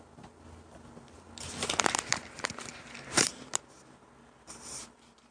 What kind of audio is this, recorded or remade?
recorded